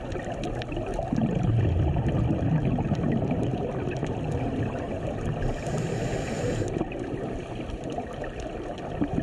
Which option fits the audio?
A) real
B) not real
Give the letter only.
A